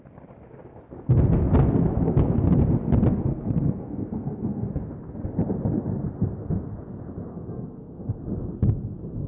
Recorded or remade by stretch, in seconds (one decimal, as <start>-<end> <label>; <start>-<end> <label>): 0.0-3.3 recorded; 3.3-4.7 remade; 4.7-7.3 recorded; 7.3-8.2 remade; 8.2-9.3 recorded

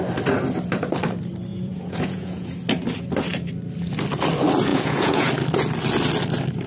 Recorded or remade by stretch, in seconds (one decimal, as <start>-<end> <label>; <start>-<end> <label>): 0.0-1.5 recorded; 1.5-2.5 remade; 2.5-4.7 recorded; 4.7-5.3 remade; 5.3-6.7 recorded

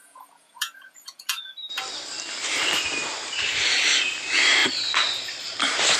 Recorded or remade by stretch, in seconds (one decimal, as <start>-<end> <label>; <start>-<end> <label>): 0.0-1.5 remade; 1.5-6.0 recorded

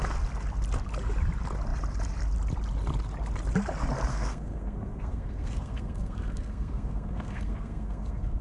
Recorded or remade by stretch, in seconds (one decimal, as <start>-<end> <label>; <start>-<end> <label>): 0.0-4.1 recorded; 4.1-8.4 remade

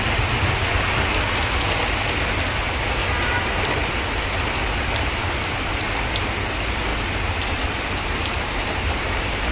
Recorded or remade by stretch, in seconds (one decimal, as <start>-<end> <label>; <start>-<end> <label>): 0.0-3.0 recorded; 3.0-3.9 remade; 3.9-6.9 recorded; 6.9-9.5 remade

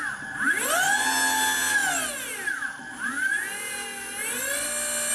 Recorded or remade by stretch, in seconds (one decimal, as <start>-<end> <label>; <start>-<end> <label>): 0.0-5.1 recorded

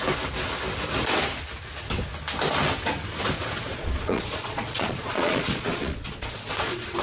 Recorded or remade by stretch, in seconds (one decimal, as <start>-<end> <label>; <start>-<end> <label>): 0.0-3.7 recorded; 3.7-7.0 remade